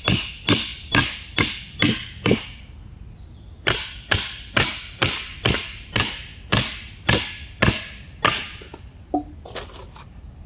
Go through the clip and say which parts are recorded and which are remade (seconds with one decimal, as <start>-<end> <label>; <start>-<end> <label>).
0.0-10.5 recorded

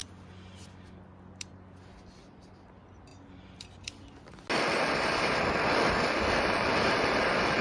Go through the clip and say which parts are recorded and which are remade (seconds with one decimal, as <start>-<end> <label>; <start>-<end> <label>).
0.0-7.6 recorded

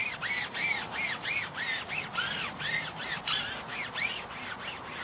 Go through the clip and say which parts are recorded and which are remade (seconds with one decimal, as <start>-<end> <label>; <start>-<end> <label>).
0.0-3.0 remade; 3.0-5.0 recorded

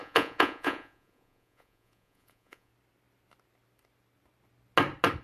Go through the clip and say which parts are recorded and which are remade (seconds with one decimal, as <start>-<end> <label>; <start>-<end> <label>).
0.0-2.7 remade; 2.7-5.2 recorded